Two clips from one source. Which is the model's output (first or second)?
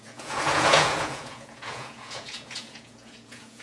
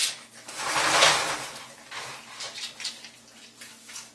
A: first